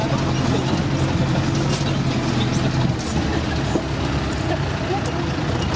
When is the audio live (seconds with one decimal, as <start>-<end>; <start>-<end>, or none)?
0.0-5.8